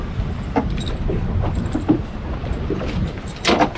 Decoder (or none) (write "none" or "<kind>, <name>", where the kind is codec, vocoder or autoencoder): none